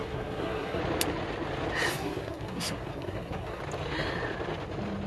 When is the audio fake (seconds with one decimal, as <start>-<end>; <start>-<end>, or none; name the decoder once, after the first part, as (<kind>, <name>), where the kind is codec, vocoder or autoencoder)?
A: 0.0-0.8 (codec, SNAC); 1.9-3.6